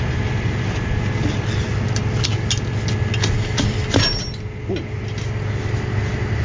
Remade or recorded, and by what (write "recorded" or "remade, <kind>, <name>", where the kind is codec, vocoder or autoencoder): recorded